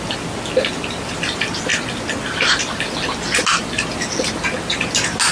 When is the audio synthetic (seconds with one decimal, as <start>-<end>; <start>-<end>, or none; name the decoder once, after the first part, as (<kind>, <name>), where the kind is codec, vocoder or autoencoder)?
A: none